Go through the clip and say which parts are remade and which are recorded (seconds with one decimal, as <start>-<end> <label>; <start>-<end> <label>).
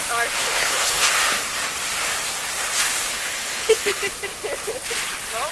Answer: 0.0-0.4 recorded; 0.4-1.1 remade; 1.1-3.1 recorded; 3.1-4.0 remade; 4.0-5.5 recorded